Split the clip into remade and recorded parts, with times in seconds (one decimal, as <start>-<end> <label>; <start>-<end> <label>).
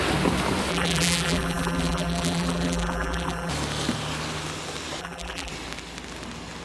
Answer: 0.0-0.7 recorded; 0.7-3.5 remade; 3.5-5.0 recorded; 5.0-5.5 remade; 5.5-6.6 recorded